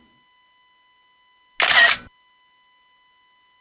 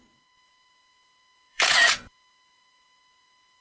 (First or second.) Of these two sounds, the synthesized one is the second